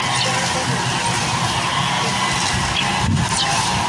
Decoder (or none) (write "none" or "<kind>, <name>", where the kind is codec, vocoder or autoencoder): none